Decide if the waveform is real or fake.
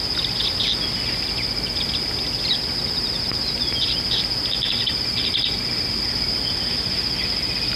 real